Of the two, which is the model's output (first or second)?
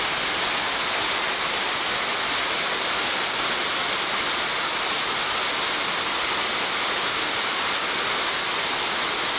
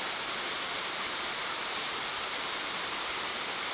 second